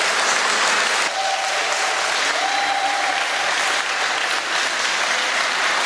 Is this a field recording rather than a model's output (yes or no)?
yes